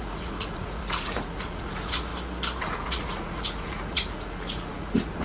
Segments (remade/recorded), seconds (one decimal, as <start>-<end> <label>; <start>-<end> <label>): 0.0-2.1 remade; 2.1-2.6 recorded; 2.6-5.2 remade